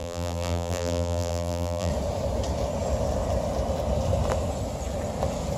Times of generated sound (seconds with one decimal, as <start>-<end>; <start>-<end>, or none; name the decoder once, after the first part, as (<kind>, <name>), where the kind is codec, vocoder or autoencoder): 0.0-1.9 (vocoder, BigVGAN v2)